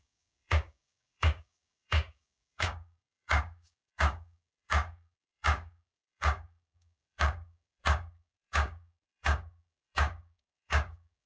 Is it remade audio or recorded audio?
remade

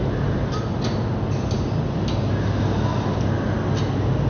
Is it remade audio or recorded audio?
recorded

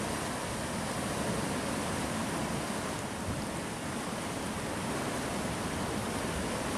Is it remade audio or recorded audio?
recorded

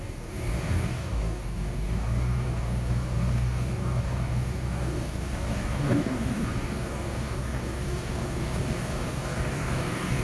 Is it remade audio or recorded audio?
remade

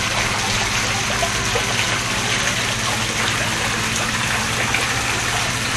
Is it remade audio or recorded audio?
recorded